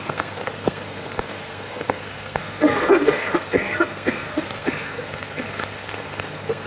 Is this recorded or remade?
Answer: remade